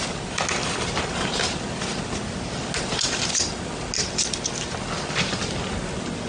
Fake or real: real